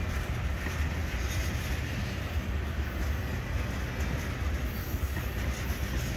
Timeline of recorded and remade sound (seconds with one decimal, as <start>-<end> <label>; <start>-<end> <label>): 0.0-4.8 recorded; 4.8-5.3 remade; 5.3-6.2 recorded